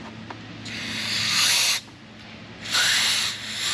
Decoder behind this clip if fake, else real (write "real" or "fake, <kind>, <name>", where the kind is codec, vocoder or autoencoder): real